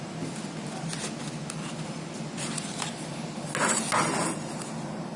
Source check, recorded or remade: recorded